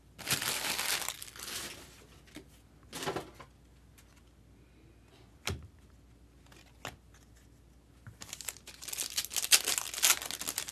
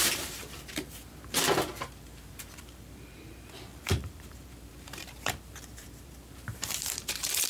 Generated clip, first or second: second